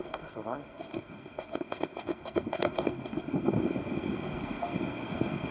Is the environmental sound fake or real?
fake